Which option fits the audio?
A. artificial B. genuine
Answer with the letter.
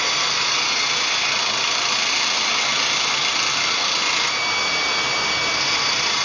B